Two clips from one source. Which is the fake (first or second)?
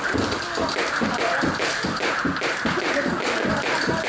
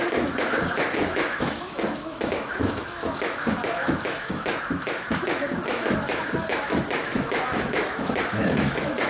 second